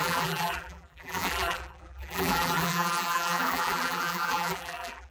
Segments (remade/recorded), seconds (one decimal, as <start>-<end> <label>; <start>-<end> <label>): 0.0-5.1 remade